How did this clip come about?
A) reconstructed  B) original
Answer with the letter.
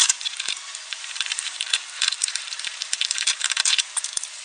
A